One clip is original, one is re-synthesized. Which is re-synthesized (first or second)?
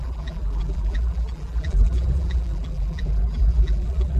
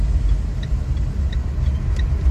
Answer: first